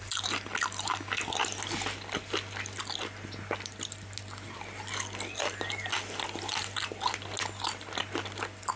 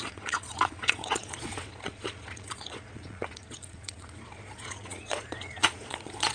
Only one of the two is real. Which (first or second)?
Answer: first